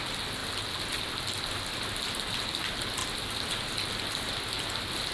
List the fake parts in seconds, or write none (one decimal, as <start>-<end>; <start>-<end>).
none